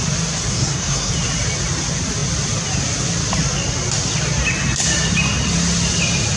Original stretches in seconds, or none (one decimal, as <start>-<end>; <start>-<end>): 0.0-0.5; 1.1-6.4